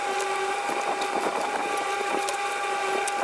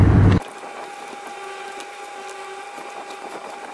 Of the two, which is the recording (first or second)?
second